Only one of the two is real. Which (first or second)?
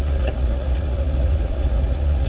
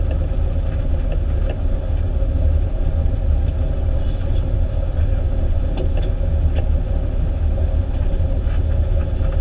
second